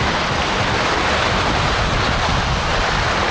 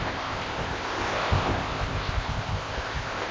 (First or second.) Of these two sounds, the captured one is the first